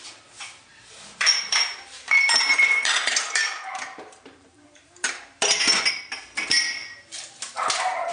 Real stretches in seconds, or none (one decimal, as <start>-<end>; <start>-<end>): 0.0-0.7; 5.6-8.1